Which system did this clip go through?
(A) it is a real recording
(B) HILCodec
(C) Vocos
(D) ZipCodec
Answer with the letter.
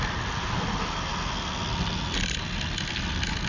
A